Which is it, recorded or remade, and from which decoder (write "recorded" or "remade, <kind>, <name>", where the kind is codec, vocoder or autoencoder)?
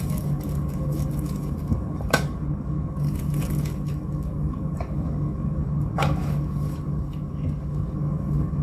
remade, codec, DAC